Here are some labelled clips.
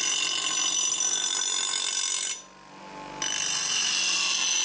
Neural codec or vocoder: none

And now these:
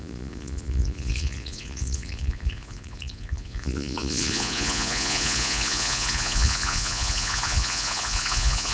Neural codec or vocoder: vocoder, Vocos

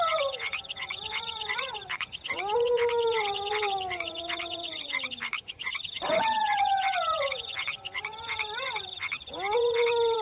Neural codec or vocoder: vocoder, Vocos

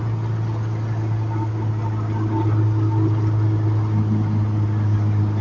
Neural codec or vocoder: none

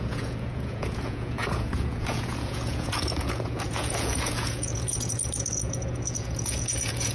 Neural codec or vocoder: vocoder, Vocos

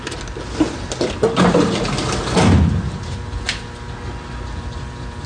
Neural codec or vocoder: none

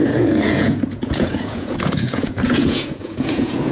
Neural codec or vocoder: vocoder, Vocos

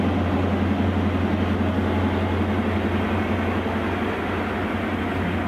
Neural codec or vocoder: none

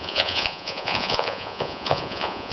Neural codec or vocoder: vocoder, Vocos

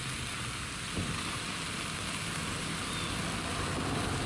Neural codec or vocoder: none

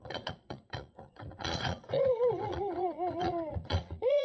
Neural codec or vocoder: vocoder, Vocos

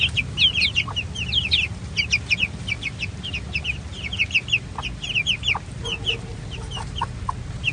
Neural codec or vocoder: none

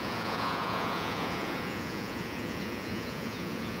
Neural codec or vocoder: vocoder, Vocos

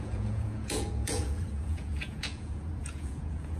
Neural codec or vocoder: vocoder, Vocos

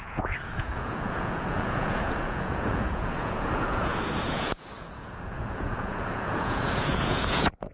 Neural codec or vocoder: vocoder, Vocos